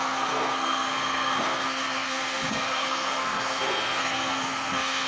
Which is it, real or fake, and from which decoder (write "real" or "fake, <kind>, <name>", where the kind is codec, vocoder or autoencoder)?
fake, codec, SNAC